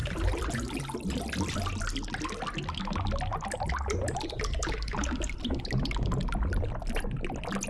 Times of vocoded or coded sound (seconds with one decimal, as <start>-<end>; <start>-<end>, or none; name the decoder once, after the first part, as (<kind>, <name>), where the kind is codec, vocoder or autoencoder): none